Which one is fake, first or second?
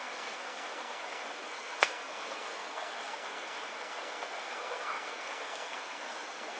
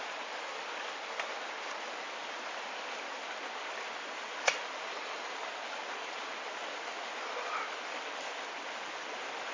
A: first